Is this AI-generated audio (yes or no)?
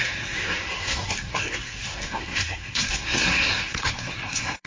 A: yes